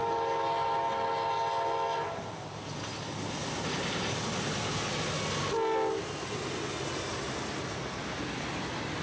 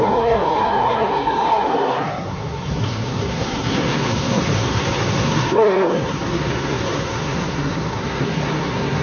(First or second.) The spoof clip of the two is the second